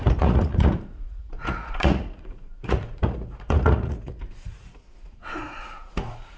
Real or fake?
fake